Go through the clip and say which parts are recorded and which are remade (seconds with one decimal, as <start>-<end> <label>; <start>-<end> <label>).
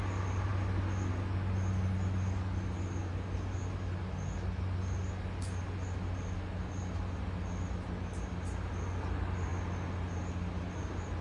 0.0-11.2 recorded